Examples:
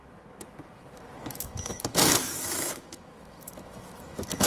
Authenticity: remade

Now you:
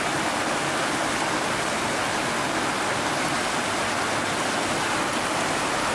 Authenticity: recorded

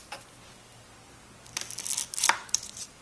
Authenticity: recorded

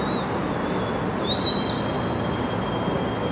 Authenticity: recorded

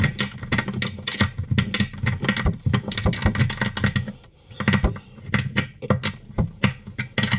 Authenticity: recorded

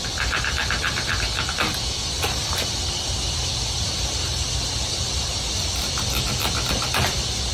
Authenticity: remade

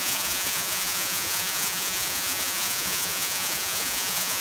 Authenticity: remade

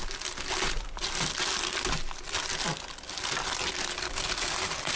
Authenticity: recorded